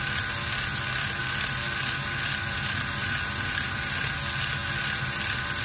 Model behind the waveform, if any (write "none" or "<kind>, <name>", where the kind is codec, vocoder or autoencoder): none